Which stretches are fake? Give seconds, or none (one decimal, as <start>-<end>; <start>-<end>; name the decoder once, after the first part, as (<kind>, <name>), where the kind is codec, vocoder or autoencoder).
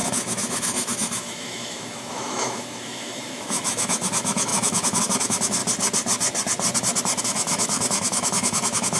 0.0-5.6 (autoencoder, DAC-VAE); 7.2-9.0